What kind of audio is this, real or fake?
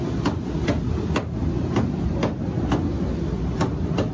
real